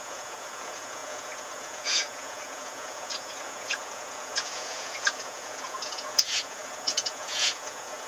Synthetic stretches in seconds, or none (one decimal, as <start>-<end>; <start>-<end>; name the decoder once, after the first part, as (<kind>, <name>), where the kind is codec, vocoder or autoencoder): 0.0-8.1 (vocoder, Vocos)